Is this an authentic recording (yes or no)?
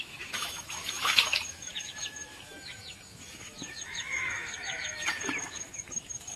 no